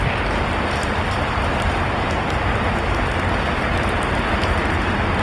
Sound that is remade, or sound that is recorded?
recorded